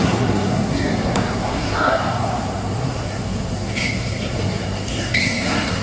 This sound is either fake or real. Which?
fake